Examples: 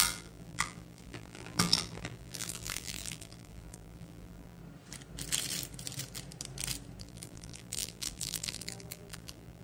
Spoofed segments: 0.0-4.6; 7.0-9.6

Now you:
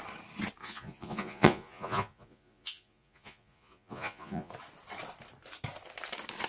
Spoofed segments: 0.6-4.5